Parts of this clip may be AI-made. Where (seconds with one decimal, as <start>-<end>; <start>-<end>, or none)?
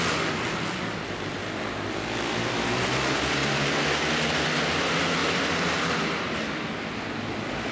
none